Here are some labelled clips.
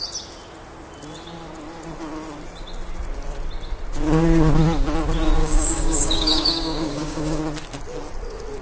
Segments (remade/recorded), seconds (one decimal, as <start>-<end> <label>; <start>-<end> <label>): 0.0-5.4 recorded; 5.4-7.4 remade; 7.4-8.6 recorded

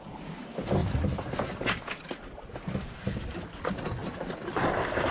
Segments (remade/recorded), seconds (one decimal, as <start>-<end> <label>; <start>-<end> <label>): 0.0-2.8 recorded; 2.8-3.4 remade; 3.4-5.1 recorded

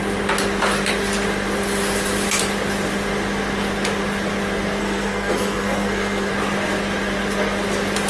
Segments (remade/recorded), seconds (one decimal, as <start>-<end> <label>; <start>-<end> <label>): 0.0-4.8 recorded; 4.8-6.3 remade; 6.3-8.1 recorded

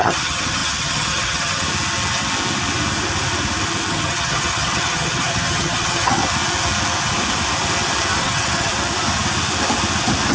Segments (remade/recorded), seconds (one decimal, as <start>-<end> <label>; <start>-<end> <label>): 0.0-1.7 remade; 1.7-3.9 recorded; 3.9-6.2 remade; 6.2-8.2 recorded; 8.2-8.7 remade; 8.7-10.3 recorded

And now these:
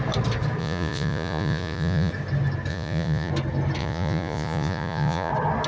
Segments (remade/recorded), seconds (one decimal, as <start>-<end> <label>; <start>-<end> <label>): 0.0-0.6 recorded; 0.6-2.1 remade; 2.1-2.7 recorded; 2.7-3.3 remade; 3.3-3.8 recorded; 3.8-5.3 remade; 5.3-5.7 recorded

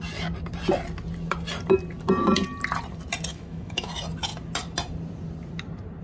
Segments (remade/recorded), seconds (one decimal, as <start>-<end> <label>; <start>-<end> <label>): 0.0-3.3 recorded; 3.3-3.9 remade; 3.9-6.0 recorded

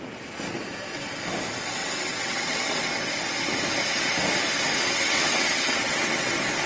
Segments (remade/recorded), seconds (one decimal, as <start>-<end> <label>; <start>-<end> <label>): 0.0-1.8 recorded; 1.8-3.1 remade; 3.1-4.7 recorded; 4.7-6.3 remade; 6.3-6.7 recorded

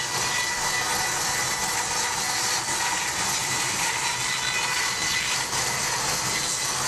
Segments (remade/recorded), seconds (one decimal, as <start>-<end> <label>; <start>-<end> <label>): 0.0-3.4 recorded; 3.4-3.9 remade; 3.9-6.9 recorded